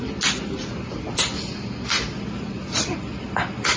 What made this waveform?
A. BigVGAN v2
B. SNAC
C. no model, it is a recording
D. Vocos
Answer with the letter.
C